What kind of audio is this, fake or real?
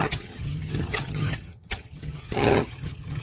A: fake